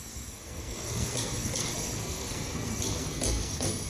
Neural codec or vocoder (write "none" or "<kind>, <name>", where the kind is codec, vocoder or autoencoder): codec, SNAC